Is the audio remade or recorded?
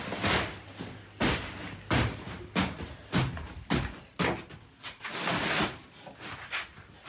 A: recorded